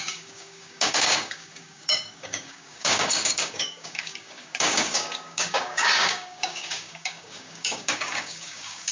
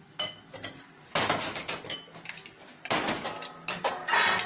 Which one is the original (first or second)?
second